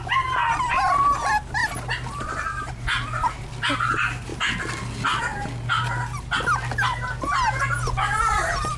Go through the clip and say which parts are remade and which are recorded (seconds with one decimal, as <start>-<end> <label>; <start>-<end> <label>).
0.0-8.8 recorded